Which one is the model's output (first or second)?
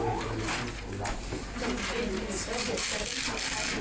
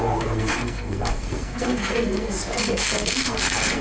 second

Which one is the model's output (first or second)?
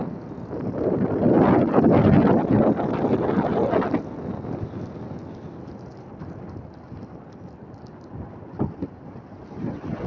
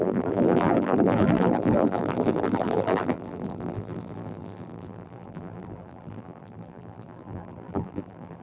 second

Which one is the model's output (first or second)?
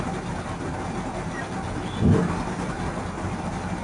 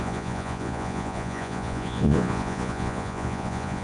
second